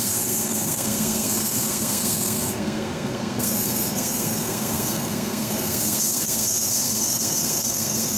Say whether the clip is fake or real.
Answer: fake